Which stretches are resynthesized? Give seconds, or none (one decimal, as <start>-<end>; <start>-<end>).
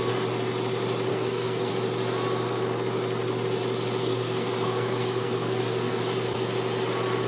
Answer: 1.1-1.7; 4.0-6.0